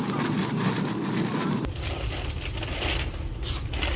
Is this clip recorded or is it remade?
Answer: recorded